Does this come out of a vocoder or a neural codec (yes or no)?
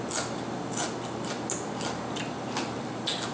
no